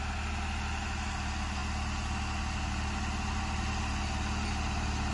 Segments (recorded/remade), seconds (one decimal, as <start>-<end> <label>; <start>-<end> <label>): 0.0-5.1 recorded